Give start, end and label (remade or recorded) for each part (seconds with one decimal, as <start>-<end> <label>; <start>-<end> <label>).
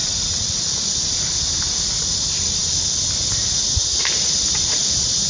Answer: 0.0-0.7 remade; 0.7-5.3 recorded